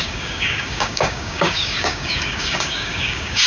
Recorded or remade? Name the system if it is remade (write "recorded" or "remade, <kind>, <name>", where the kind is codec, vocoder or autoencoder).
remade, codec, DAC